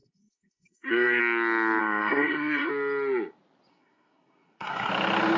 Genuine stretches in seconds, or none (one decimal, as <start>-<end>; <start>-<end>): 1.2-1.8; 2.7-3.7; 4.9-5.4